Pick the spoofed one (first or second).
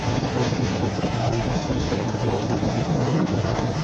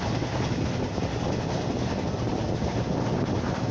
first